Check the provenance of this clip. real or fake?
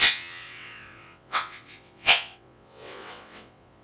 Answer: fake